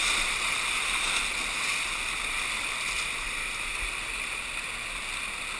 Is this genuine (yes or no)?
yes